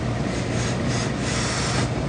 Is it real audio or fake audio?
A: real